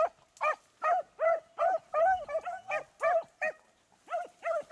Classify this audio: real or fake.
real